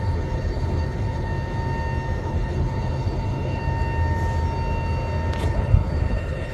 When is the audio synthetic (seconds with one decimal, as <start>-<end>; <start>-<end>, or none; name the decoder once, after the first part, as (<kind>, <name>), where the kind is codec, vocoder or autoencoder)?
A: 0.0-1.3 (codec, HILCodec); 2.2-3.6; 5.4-6.5